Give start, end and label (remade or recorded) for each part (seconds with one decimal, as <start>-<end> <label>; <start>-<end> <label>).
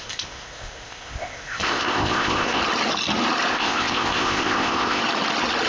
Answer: 0.0-2.6 remade; 2.6-3.5 recorded; 3.5-5.0 remade; 5.0-5.7 recorded